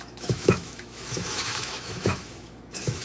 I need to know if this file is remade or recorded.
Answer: remade